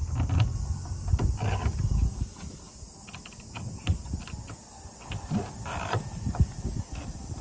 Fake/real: real